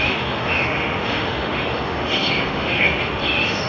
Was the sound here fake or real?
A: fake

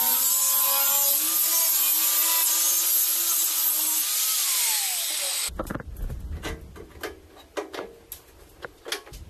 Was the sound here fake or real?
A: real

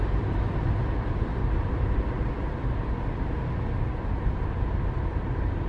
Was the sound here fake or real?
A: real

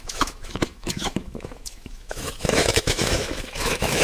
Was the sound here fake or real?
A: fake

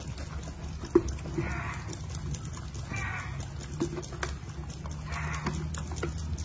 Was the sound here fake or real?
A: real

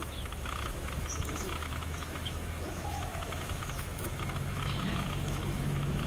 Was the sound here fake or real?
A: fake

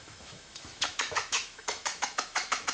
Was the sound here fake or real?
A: fake